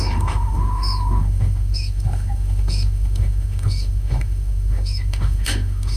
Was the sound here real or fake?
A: fake